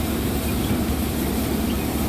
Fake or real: real